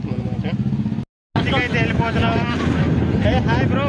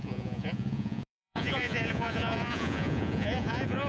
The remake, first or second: second